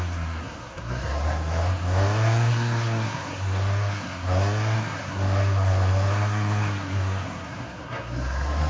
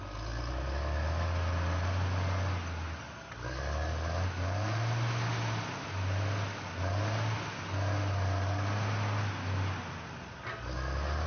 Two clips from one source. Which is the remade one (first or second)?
first